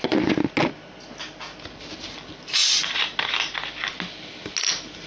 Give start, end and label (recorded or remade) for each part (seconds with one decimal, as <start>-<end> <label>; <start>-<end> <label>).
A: 0.0-5.1 recorded